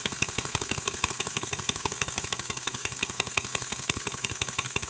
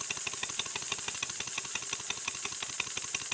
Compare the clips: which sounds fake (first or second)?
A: first